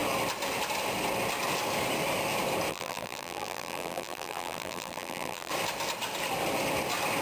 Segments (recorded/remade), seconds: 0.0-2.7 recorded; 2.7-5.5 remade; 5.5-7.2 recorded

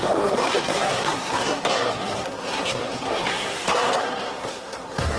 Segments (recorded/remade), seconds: 0.0-5.2 remade

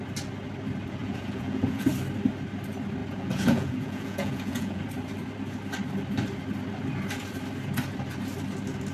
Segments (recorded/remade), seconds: 0.0-1.0 recorded; 1.0-1.9 remade; 1.9-3.0 recorded; 3.0-4.8 remade; 4.8-8.9 recorded

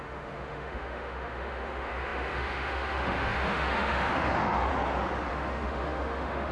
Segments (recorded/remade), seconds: 0.0-4.7 remade; 4.7-5.3 recorded; 5.3-6.5 remade

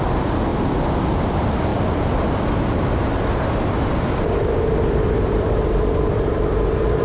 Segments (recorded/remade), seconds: 0.0-0.5 remade; 0.5-1.0 recorded; 1.0-7.0 remade

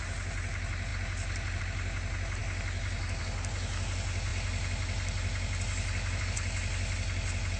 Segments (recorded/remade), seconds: 0.0-7.6 recorded